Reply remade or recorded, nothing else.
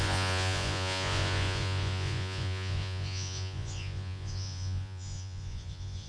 remade